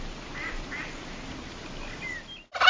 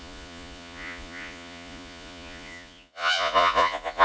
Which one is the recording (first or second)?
first